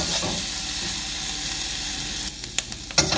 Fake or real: real